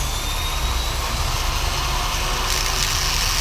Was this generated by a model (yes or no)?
no